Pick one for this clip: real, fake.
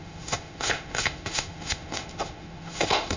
fake